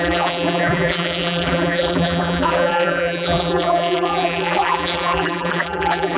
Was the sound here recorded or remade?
remade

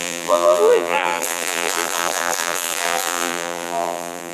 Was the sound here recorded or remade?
remade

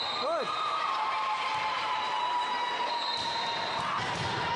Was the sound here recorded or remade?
remade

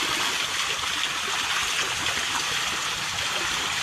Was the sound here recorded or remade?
recorded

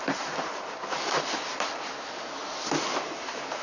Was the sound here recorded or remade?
recorded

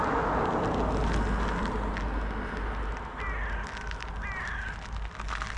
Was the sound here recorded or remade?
recorded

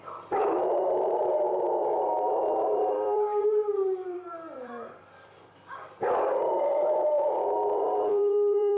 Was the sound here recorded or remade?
remade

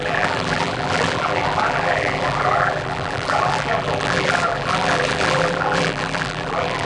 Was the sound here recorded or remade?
remade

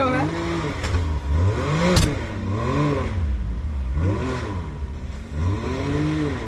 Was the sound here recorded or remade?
recorded